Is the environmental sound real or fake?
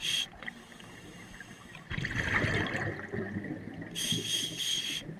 real